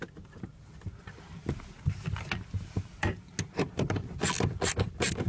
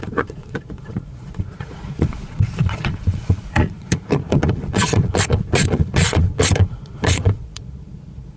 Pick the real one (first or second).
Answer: first